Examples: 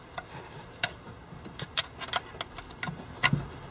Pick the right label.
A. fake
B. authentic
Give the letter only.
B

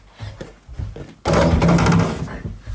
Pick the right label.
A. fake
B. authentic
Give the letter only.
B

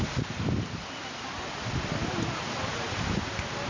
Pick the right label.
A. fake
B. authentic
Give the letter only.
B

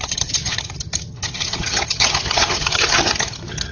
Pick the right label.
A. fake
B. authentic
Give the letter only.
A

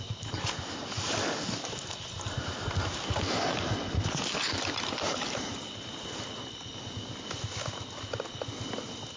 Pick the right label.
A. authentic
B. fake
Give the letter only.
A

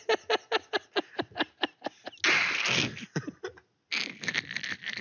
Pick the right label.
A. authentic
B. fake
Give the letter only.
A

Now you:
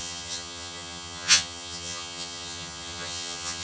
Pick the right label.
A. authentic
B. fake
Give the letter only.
B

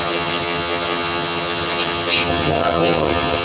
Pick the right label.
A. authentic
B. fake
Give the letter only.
B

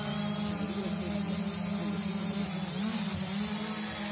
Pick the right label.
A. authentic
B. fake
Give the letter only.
A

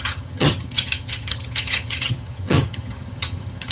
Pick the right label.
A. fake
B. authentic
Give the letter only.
A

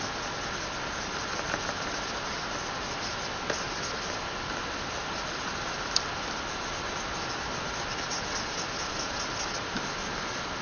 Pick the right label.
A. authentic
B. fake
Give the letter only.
A